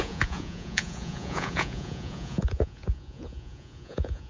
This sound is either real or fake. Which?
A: fake